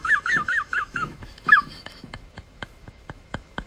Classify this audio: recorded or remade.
remade